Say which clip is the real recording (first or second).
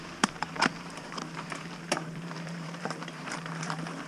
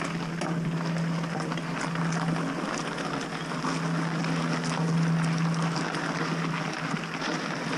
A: second